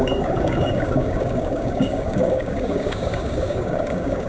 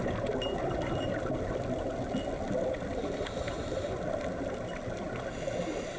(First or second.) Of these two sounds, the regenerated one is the first